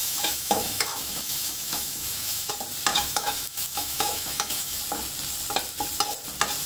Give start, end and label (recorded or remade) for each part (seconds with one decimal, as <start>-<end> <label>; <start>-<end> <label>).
0.0-2.5 remade; 2.5-2.9 recorded; 2.9-4.8 remade; 4.8-6.7 recorded